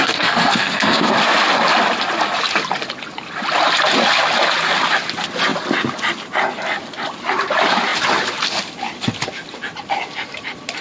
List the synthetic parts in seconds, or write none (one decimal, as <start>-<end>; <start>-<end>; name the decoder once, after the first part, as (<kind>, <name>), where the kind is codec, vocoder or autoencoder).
0.0-1.1 (codec, SNAC)